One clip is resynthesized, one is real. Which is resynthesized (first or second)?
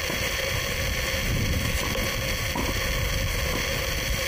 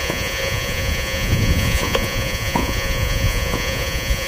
second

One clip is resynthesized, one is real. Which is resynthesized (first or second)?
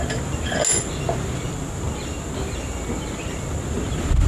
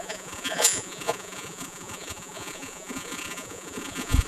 second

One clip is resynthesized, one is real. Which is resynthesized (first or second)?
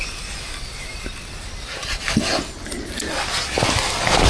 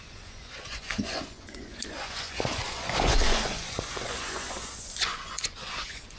second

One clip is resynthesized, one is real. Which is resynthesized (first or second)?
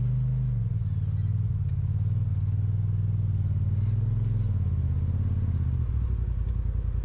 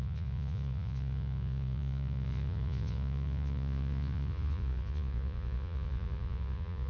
second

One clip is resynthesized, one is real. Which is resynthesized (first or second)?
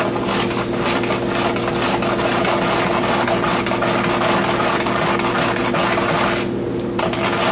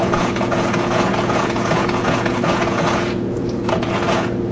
second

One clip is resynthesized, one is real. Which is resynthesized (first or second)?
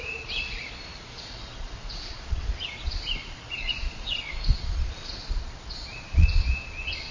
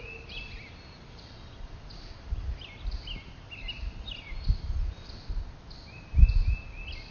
first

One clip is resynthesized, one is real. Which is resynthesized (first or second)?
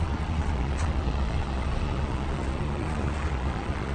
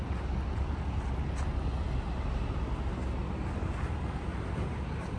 first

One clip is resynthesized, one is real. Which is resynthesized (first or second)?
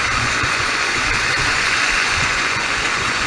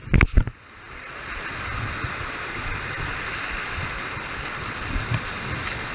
first